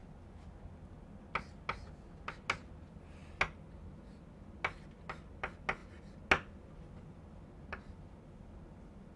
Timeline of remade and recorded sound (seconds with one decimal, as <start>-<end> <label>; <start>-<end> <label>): 0.0-9.2 recorded